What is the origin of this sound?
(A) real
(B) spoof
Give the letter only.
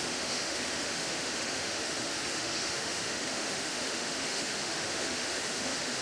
B